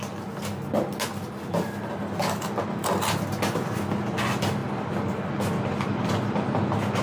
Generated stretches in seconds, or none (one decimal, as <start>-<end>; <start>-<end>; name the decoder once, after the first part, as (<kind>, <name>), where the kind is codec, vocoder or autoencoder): none